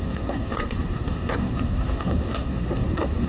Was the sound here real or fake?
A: fake